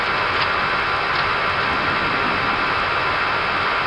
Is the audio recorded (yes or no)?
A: yes